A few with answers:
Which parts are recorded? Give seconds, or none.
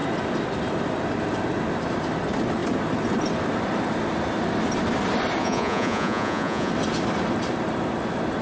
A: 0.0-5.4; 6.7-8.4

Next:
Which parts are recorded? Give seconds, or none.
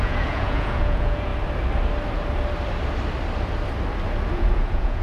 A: 1.3-4.3